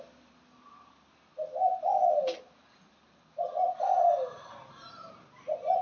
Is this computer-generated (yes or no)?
no